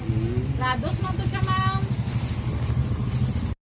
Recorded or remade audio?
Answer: recorded